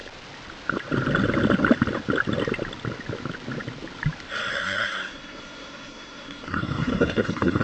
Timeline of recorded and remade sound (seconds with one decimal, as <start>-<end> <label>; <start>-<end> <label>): 0.0-4.5 recorded; 4.5-7.6 remade